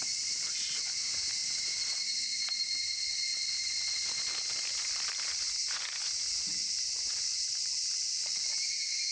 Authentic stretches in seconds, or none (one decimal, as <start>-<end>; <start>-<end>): 0.0-6.6; 8.5-9.1